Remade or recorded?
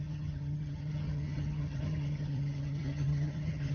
remade